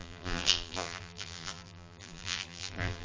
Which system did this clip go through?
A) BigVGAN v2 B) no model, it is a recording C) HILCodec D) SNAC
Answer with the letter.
A